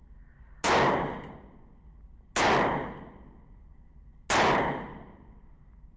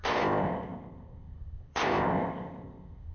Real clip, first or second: first